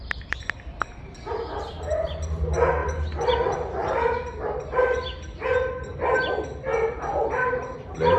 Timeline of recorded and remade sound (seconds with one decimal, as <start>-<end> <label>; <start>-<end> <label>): 0.0-8.2 recorded